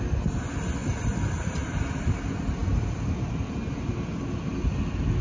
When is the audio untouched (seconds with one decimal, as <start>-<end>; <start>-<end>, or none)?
0.0-5.2